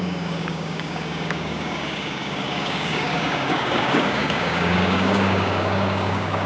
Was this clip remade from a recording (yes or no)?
yes